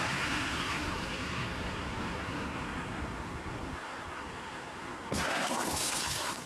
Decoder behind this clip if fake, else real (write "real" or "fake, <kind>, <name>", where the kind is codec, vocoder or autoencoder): fake, codec, SNAC